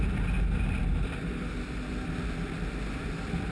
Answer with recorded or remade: recorded